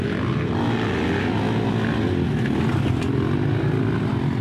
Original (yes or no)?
yes